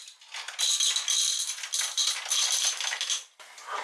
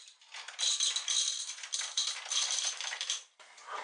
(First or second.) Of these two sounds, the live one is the first